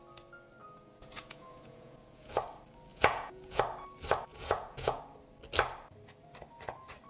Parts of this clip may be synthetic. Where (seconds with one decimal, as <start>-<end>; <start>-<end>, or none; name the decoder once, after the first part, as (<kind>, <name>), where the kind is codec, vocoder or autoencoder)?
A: 0.6-2.3 (vocoder, Vocos); 2.9-3.6; 4.3-5.0